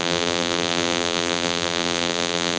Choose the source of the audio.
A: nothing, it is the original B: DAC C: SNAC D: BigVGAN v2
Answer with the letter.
D